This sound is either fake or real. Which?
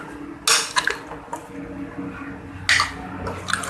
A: real